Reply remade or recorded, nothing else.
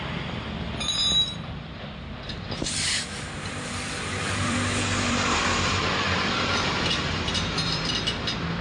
remade